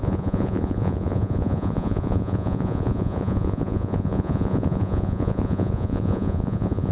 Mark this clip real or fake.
fake